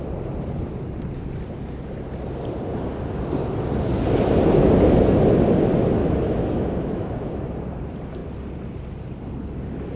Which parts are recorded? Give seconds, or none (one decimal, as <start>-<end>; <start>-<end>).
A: 0.0-6.0; 7.3-10.0